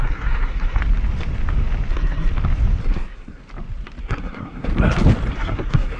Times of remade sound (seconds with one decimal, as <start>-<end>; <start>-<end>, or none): 0.0-0.8; 1.9-2.3; 2.8-3.4; 4.0-4.7; 5.3-6.0

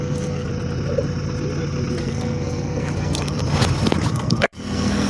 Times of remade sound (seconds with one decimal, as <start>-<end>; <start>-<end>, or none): 0.0-0.5; 2.0-3.4; 4.1-5.1

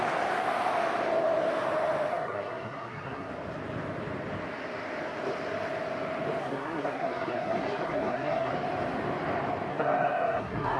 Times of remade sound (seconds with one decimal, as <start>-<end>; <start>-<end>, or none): 2.1-3.3; 6.4-8.5; 9.7-10.8

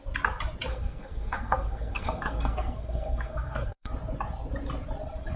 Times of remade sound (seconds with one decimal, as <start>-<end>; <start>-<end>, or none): 0.7-3.9

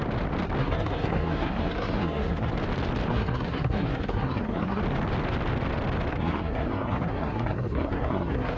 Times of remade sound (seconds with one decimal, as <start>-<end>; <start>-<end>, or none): 0.6-2.5; 3.1-4.8; 6.1-8.6

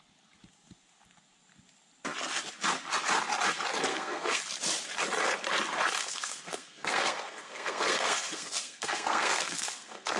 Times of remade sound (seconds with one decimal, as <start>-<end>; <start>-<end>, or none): 3.9-4.4; 6.0-10.2